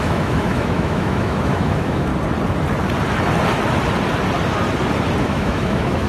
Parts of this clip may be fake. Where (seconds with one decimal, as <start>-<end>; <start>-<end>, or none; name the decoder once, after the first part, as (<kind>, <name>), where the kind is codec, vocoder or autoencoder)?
0.0-2.1 (autoencoder, DAC-VAE); 5.2-6.1